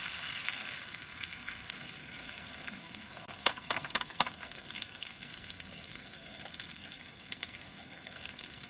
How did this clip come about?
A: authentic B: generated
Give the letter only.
B